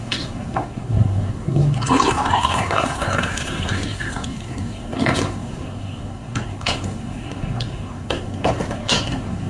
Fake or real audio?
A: fake